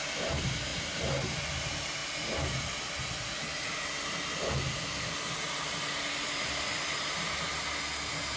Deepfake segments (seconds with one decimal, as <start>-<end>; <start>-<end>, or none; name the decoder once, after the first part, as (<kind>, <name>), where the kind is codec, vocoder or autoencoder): none